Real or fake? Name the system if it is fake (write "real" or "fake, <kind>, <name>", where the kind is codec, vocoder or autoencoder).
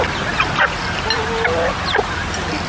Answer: real